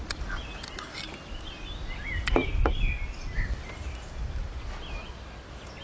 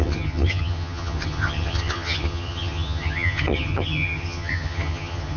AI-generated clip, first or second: second